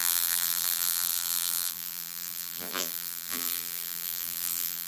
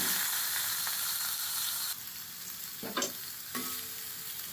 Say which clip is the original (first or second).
second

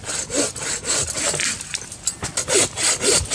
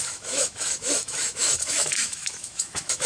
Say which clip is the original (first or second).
first